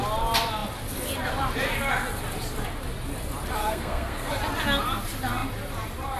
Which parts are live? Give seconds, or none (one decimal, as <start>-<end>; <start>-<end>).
0.0-3.6; 4.3-6.2